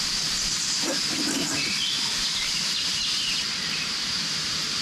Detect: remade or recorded recorded